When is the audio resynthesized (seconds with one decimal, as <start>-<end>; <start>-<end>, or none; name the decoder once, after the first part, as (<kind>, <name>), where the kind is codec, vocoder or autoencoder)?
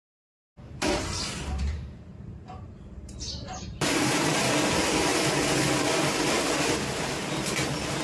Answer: 1.4-4.5 (vocoder, BigVGAN v2)